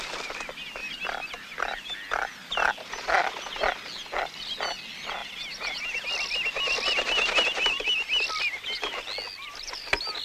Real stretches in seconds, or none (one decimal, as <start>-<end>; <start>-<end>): 0.0-10.2